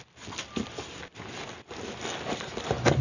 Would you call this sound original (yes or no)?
yes